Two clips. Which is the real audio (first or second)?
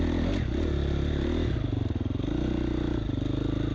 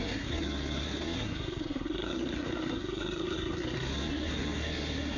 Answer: first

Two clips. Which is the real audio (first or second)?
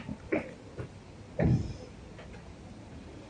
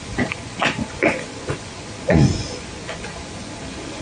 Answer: first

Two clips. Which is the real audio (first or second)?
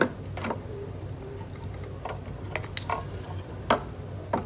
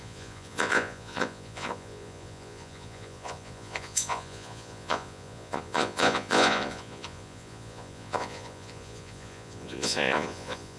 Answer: first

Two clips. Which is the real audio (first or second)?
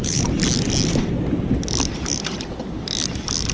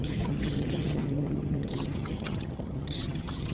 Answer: first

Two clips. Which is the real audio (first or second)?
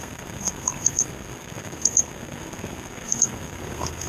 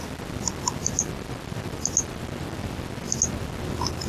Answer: second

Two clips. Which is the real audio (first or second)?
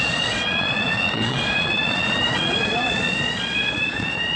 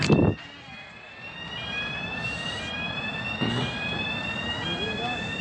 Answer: second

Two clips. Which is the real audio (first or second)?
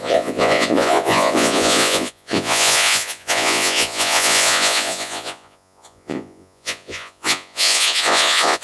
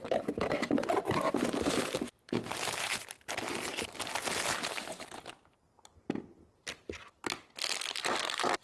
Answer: second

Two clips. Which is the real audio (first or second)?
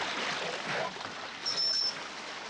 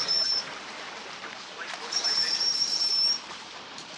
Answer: first